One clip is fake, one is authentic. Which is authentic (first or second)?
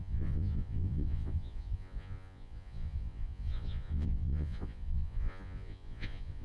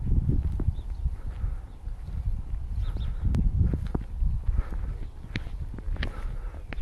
second